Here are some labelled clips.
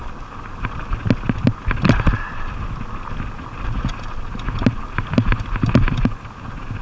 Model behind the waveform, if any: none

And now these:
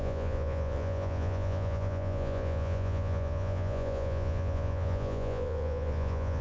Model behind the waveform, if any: vocoder, Vocos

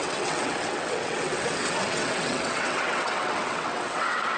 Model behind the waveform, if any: vocoder, WaveNeXt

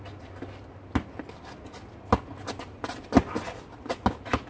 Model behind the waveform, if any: none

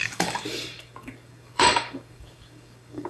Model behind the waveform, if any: codec, DAC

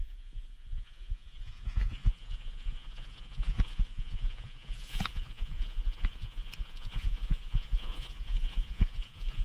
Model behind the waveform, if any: vocoder, Vocos